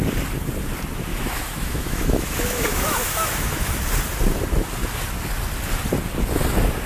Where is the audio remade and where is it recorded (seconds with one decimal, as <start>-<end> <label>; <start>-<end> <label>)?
0.0-1.1 recorded; 1.1-3.8 remade; 3.8-6.9 recorded